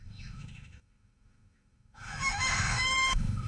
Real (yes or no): no